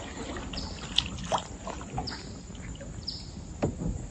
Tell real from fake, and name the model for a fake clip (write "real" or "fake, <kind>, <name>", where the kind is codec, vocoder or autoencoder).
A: real